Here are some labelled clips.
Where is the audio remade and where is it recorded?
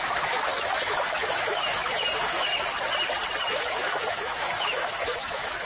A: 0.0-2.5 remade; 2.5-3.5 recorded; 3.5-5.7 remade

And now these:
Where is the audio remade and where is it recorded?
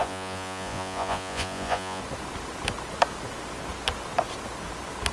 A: 0.0-2.0 remade; 2.0-5.1 recorded